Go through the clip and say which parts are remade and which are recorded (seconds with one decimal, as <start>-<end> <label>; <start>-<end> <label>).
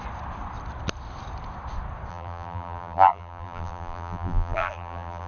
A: 0.0-2.1 recorded; 2.1-5.3 remade